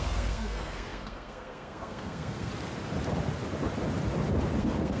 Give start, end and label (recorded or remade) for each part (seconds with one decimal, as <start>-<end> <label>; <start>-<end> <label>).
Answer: 0.0-2.5 remade; 2.5-4.6 recorded; 4.6-5.0 remade